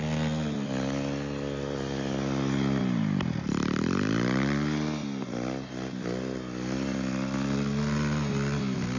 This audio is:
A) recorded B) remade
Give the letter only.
A